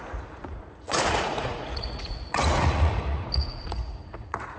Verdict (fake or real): fake